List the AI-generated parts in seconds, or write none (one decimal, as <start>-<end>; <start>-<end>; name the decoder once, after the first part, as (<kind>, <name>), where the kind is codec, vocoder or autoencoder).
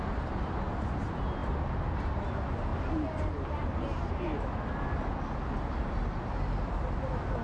none